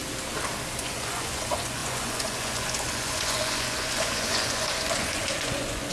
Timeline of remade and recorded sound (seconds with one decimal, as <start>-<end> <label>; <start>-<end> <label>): 0.0-0.8 recorded; 0.8-5.9 remade